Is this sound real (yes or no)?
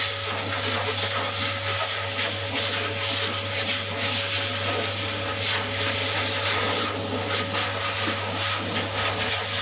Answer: yes